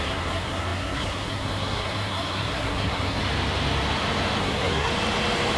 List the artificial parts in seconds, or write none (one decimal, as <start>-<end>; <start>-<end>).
0.0-3.2; 4.4-4.9